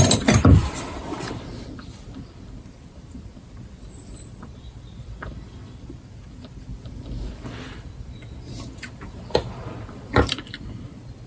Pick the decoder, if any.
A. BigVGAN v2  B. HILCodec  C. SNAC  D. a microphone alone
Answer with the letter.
A